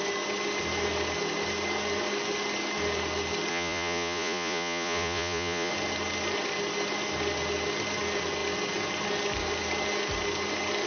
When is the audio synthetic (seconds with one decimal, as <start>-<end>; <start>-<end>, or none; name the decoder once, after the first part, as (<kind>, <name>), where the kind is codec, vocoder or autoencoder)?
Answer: 3.5-5.7 (vocoder, Vocos)